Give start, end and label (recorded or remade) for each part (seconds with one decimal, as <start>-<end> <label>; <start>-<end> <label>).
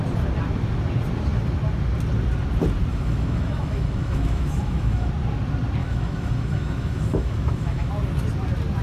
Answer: 0.0-2.9 recorded; 2.9-5.1 remade; 5.1-5.8 recorded; 5.8-7.9 remade; 7.9-8.8 recorded